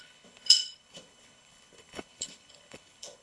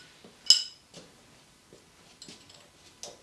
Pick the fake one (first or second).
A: first